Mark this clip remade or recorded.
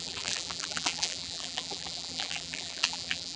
remade